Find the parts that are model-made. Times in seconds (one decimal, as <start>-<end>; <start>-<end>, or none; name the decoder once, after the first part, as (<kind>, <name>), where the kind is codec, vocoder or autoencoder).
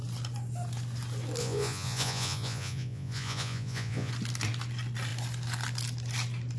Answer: 1.4-4.1 (vocoder, Vocos)